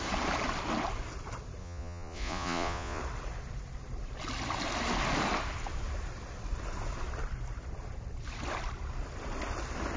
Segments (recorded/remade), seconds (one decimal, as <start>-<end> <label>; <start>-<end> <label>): 0.0-1.6 recorded; 1.6-3.0 remade; 3.0-10.0 recorded